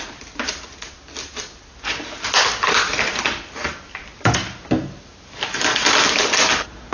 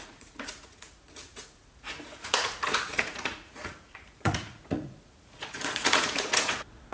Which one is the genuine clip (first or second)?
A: first